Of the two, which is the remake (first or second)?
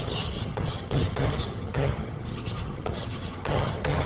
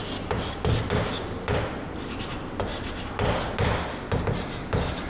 first